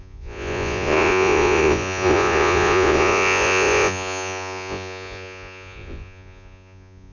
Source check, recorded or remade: remade